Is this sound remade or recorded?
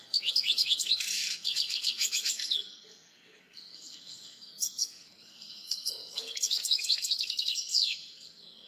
remade